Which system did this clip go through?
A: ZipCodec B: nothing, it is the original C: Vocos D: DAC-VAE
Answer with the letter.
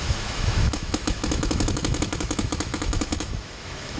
D